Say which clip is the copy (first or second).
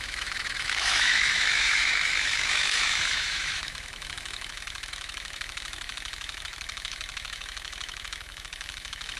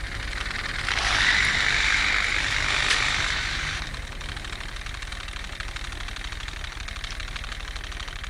first